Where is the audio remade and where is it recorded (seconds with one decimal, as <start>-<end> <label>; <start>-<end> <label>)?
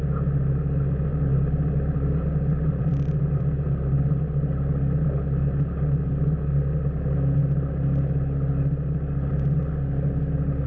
0.0-1.1 recorded; 1.1-4.1 remade; 4.1-10.7 recorded